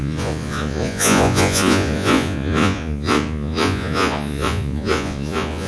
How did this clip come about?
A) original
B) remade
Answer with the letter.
B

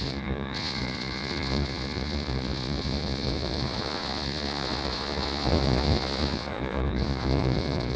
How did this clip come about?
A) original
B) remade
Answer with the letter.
B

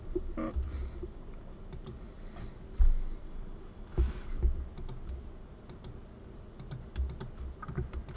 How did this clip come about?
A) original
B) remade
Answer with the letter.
A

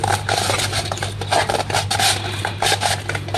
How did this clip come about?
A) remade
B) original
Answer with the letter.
B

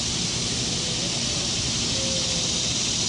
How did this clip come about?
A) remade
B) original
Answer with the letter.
B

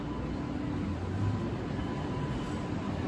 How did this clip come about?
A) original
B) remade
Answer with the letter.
A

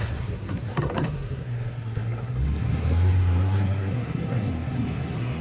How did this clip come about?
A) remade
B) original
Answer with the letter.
A